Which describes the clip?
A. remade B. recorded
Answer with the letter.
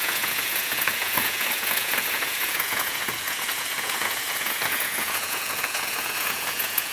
A